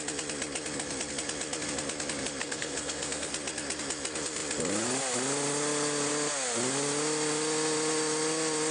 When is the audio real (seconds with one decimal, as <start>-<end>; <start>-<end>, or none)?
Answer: 0.0-2.4; 3.3-8.7